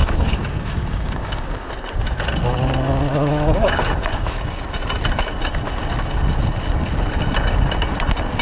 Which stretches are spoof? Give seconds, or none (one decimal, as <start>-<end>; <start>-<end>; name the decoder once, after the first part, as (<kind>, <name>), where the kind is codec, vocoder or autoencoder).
0.0-1.7 (codec, DAC); 3.1-4.6